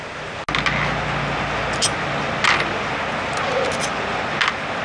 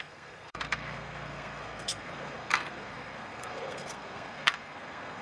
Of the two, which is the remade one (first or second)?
second